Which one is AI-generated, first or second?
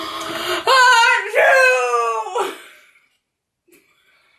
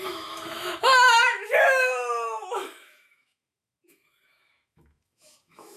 second